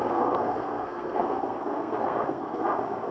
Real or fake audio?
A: fake